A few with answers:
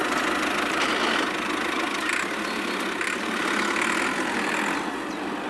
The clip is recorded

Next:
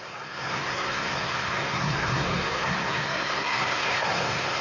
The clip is remade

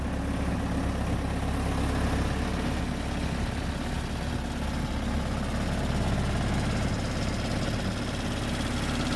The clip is recorded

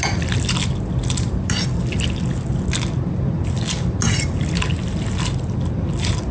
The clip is recorded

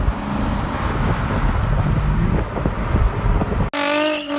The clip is recorded